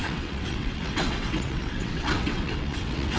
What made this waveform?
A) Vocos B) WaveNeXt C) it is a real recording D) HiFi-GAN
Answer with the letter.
B